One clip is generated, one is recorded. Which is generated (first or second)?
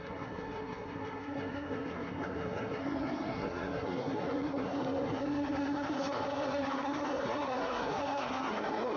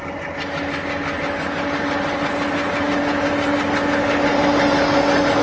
first